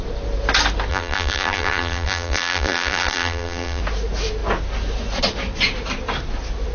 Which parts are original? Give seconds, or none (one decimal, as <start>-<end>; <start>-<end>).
0.0-0.9; 3.8-6.7